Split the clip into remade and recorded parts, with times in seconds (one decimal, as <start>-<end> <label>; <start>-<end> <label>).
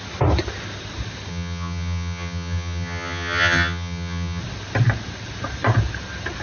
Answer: 0.0-1.3 recorded; 1.3-4.4 remade; 4.4-6.4 recorded